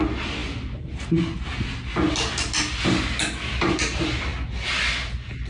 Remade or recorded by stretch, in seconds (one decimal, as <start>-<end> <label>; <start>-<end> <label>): 0.0-5.5 recorded